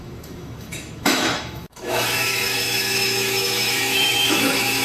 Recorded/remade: remade